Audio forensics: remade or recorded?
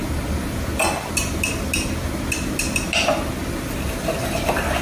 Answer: recorded